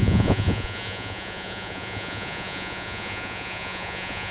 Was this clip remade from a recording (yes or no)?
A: yes